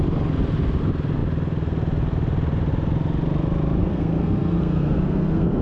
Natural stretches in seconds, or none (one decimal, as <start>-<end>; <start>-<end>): 0.0-3.8